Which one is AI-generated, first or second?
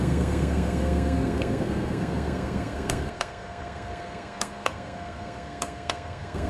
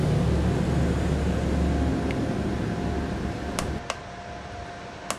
first